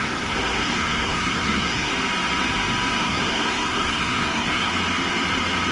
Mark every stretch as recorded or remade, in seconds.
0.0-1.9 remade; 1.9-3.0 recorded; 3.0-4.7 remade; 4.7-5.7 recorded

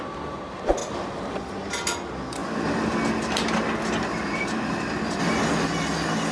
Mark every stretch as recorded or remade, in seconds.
0.0-6.3 recorded

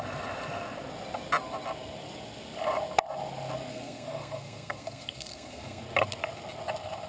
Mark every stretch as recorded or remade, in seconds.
0.0-3.7 recorded; 3.7-5.8 remade; 5.8-7.1 recorded

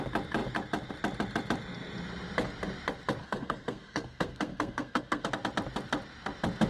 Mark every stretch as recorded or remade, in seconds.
0.0-3.2 recorded; 3.2-5.3 remade; 5.3-6.7 recorded

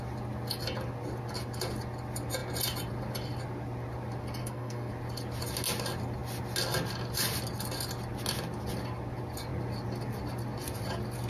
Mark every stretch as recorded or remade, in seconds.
0.0-4.4 recorded; 4.4-4.9 remade; 4.9-11.3 recorded

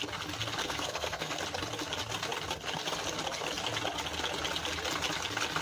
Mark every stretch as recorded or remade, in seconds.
0.0-0.6 recorded; 0.6-1.4 remade; 1.4-5.6 recorded

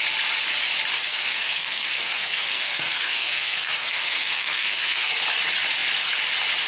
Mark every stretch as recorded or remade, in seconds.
0.0-1.1 recorded; 1.1-5.1 remade; 5.1-6.7 recorded

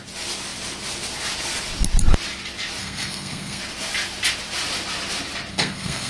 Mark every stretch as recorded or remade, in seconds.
0.0-2.8 recorded; 2.8-3.6 remade; 3.6-5.5 recorded; 5.5-6.1 remade